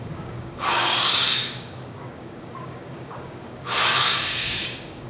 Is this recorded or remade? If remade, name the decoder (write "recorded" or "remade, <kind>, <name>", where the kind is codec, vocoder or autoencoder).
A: remade, codec, DAC